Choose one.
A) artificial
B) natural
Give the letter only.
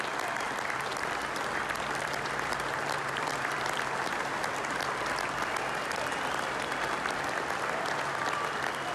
A